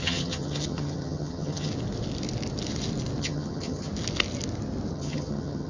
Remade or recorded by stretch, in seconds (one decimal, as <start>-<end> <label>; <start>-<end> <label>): 0.0-1.7 remade; 1.7-3.2 recorded; 3.2-3.9 remade; 3.9-4.9 recorded; 4.9-5.7 remade